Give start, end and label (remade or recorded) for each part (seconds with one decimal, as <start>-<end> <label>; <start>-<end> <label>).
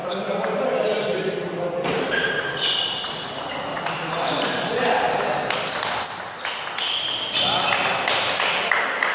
0.0-2.3 remade; 2.3-3.7 recorded; 3.7-4.7 remade; 4.7-9.1 recorded